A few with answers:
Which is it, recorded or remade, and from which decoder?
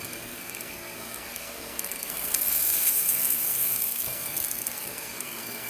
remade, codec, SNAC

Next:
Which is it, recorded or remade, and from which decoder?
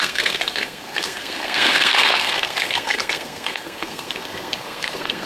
remade, codec, SNAC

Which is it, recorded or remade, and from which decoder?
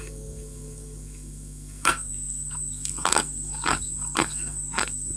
remade, codec, SNAC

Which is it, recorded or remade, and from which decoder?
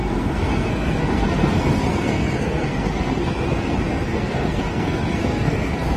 remade, codec, SNAC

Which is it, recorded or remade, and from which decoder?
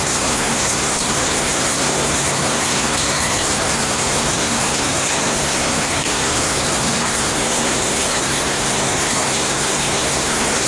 remade, codec, SNAC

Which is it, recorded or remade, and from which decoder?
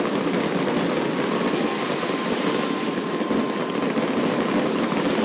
recorded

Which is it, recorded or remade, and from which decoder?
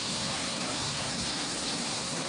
remade, codec, SNAC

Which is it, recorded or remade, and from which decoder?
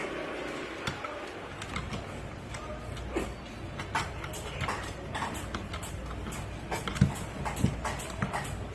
recorded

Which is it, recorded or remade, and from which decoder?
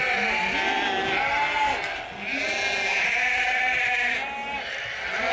recorded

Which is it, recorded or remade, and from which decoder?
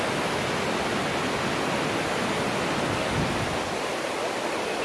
recorded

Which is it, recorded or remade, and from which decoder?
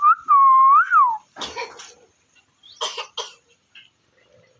recorded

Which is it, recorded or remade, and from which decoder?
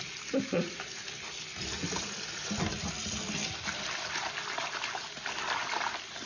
recorded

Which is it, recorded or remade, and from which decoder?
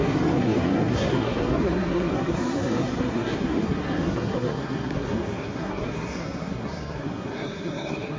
remade, codec, SNAC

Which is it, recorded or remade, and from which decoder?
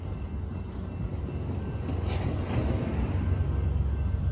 recorded